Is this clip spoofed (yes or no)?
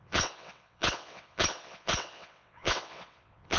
yes